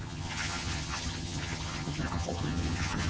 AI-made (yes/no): yes